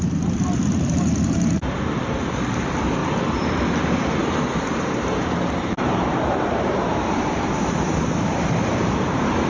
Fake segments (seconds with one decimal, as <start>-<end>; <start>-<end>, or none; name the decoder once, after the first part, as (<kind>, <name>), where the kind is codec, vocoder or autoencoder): 0.0-3.0 (vocoder, BigVGAN v2); 3.8-4.2; 4.7-9.5